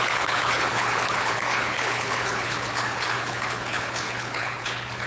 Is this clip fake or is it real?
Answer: fake